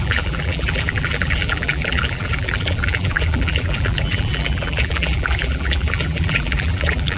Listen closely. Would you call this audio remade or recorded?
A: remade